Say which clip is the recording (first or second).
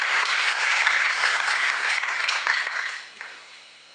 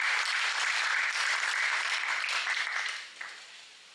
second